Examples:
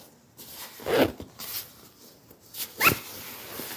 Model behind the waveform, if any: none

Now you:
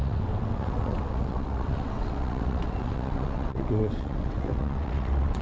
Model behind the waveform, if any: vocoder, WaveNeXt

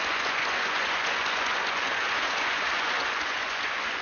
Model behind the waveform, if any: vocoder, Vocos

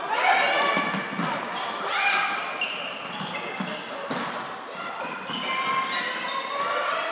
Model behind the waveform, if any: none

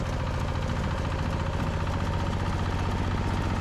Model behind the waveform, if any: none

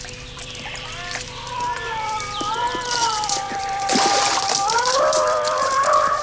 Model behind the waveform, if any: vocoder, BigVGAN v2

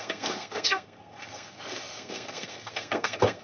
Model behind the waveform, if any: codec, SNAC